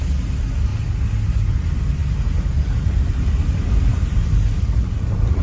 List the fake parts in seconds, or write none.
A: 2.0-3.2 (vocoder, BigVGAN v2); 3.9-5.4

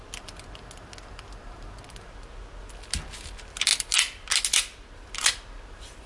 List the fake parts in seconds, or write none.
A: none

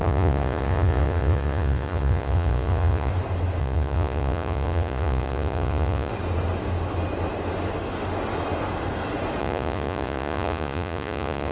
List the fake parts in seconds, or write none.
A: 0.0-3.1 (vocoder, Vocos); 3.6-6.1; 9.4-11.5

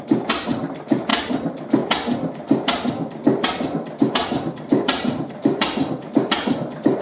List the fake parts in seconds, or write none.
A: 0.0-1.1 (vocoder, BigVGAN v2); 4.1-7.0